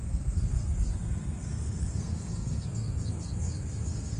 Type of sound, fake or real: fake